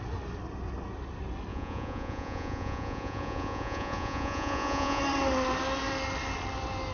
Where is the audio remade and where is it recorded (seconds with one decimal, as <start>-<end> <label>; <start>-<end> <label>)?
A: 0.0-1.5 recorded; 1.5-5.0 remade; 5.0-6.9 recorded